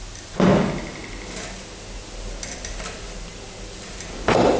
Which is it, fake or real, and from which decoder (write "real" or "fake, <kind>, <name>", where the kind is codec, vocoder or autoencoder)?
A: real